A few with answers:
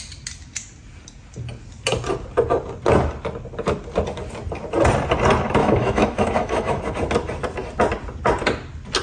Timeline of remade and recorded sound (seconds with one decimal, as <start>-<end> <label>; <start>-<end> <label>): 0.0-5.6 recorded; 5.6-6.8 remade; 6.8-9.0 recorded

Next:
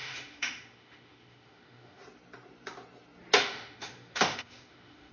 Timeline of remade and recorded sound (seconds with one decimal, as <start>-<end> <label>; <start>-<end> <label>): 0.0-2.0 remade; 2.0-3.4 recorded; 3.4-5.1 remade

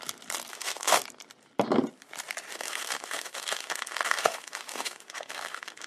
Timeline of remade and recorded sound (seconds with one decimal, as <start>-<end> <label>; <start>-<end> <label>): 0.0-0.5 recorded; 0.5-1.0 remade; 1.0-2.5 recorded; 2.5-5.9 remade

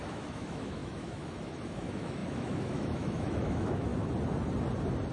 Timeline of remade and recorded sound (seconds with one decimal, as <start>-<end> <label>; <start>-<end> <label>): 0.0-3.9 remade; 3.9-5.1 recorded

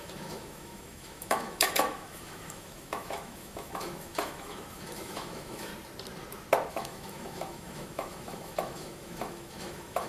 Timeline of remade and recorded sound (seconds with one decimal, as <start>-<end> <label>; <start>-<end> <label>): 0.0-5.7 remade; 5.7-6.7 recorded; 6.7-10.1 remade

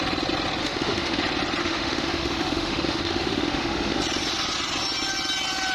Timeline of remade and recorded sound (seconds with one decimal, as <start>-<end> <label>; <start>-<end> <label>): 0.0-0.6 recorded; 0.6-1.2 remade; 1.2-1.6 recorded; 1.6-4.0 remade; 4.0-5.7 recorded